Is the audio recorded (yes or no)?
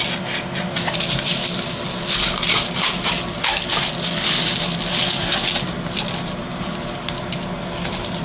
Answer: yes